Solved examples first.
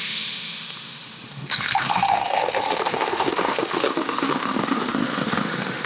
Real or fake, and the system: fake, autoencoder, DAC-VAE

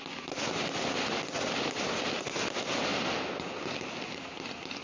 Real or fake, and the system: real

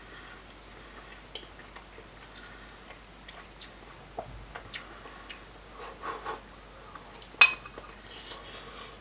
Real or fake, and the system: real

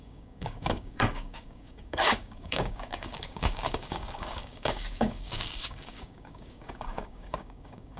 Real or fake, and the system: fake, codec, DAC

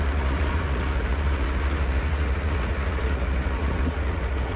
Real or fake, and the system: fake, vocoder, Vocos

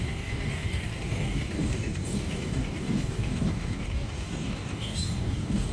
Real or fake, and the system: fake, codec, DAC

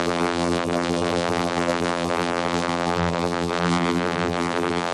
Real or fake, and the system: fake, vocoder, BigVGAN v2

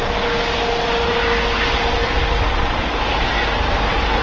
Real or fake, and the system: real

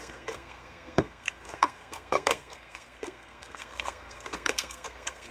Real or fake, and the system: fake, codec, SNAC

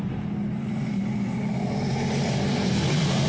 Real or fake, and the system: real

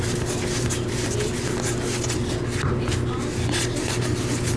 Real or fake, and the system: real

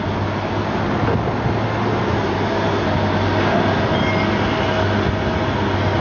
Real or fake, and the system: real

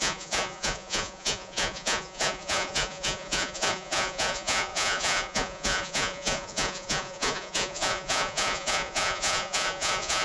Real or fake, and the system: fake, vocoder, Vocos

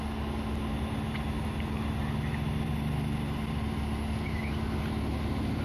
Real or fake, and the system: real